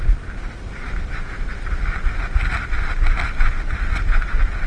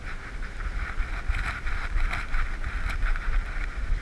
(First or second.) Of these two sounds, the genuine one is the first